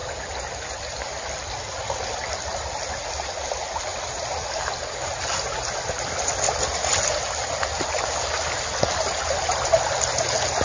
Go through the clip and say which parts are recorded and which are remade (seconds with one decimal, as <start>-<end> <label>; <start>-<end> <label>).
0.0-10.6 recorded